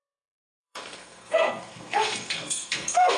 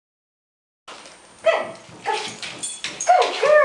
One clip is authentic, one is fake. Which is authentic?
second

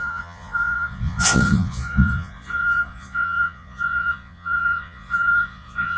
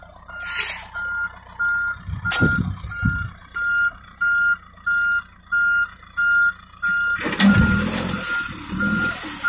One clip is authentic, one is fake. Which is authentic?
second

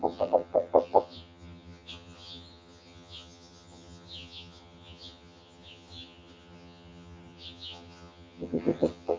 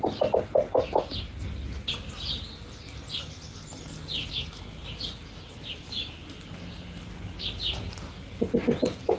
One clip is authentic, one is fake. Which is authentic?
second